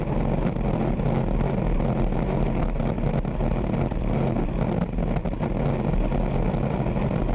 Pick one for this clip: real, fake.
real